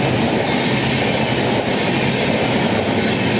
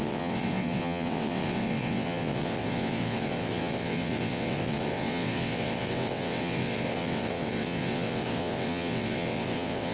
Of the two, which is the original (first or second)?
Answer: first